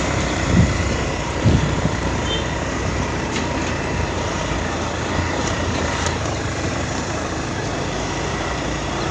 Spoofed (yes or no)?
yes